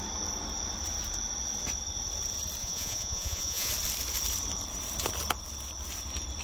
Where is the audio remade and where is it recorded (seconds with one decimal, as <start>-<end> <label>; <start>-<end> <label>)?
0.0-2.6 recorded; 2.6-3.7 remade; 3.7-6.4 recorded